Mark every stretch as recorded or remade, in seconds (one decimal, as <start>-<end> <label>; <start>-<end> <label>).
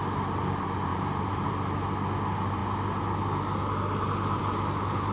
0.0-0.9 recorded; 0.9-1.5 remade; 1.5-5.1 recorded